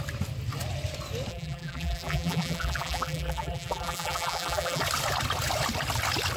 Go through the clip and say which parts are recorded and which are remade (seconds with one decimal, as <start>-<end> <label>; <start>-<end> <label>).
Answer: 0.0-1.3 recorded; 1.3-4.8 remade; 4.8-6.4 recorded